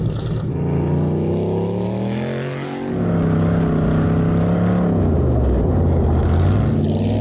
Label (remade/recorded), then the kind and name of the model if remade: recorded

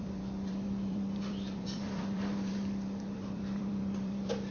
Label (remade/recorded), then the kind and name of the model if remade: remade, vocoder, BigVGAN v2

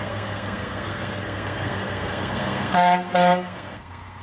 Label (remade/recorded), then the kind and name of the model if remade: remade, codec, SNAC